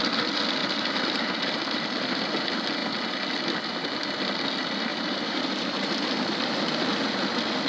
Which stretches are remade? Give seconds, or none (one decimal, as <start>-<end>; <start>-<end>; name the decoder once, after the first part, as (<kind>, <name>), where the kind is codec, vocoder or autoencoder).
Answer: 0.6-2.2 (vocoder, BigVGAN v2); 4.9-7.0